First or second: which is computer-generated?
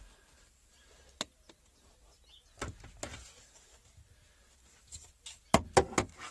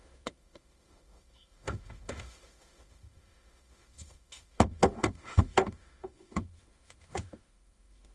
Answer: second